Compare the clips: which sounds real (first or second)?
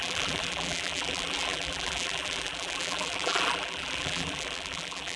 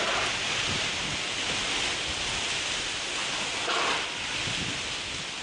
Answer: second